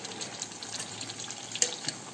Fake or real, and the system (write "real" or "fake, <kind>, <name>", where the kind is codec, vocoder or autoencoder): real